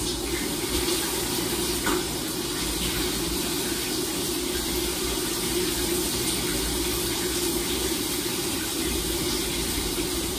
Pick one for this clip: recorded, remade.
recorded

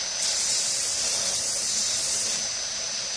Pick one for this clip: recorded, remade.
recorded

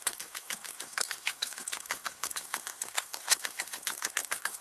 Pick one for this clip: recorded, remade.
remade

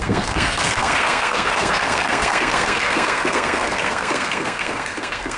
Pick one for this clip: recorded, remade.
remade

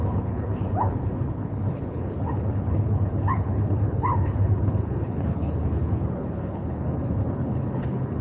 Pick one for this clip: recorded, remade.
remade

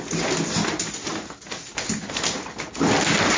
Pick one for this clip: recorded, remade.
recorded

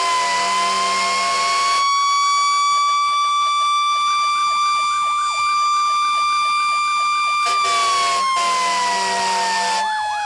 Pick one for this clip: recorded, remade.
recorded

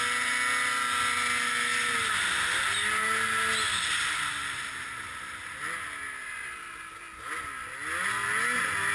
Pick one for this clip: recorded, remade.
recorded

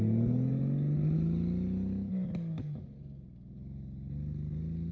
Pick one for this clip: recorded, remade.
recorded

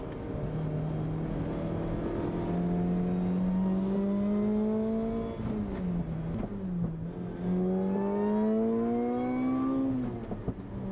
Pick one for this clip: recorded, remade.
recorded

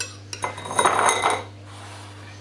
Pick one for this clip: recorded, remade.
recorded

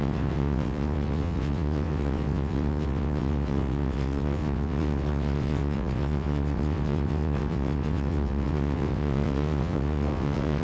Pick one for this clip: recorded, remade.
remade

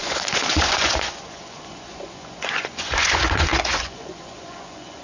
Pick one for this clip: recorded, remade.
remade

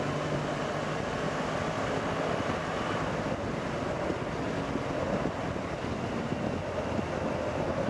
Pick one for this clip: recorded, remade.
recorded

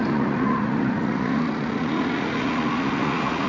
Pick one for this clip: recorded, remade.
remade